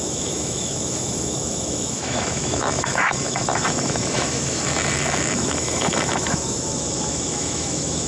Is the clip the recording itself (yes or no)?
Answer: no